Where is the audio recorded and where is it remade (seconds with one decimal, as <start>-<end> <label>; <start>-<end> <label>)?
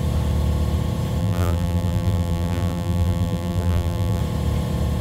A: 0.0-1.2 recorded; 1.2-4.2 remade; 4.2-5.0 recorded